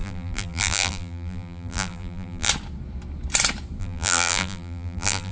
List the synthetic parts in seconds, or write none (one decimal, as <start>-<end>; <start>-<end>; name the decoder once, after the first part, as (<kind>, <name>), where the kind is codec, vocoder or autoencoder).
0.0-2.5 (vocoder, BigVGAN v2); 3.8-5.3